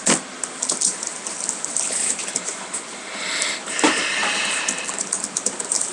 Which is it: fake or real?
real